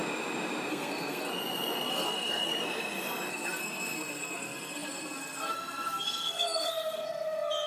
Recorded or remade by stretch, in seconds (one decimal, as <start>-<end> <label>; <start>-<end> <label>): 0.0-0.7 recorded; 0.7-1.3 remade; 1.3-1.9 recorded; 1.9-2.5 remade; 2.5-3.3 recorded; 3.3-7.7 remade